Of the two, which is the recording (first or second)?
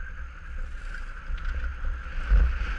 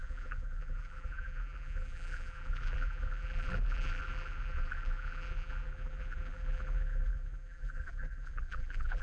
first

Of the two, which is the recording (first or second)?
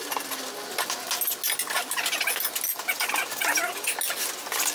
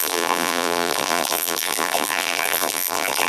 first